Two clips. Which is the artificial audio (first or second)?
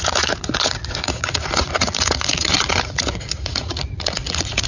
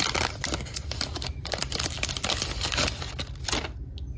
first